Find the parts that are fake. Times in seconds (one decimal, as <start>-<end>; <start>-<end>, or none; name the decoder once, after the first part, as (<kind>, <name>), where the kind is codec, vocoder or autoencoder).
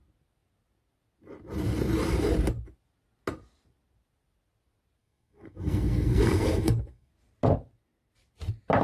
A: 5.0-7.1 (codec, SNAC)